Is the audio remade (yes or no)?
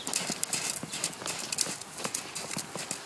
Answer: no